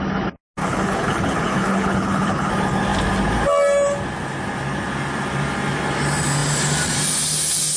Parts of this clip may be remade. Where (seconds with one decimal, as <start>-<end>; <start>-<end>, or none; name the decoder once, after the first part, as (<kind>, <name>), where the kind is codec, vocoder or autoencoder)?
0.6-2.5 (codec, HILCodec)